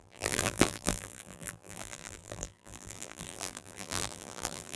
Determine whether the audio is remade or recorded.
remade